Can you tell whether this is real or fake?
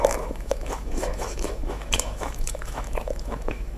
fake